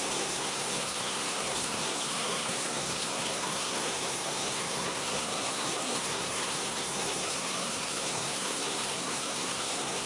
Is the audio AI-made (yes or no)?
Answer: yes